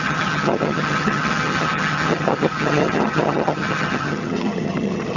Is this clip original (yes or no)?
no